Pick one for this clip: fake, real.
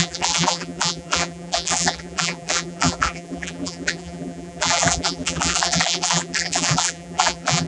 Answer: fake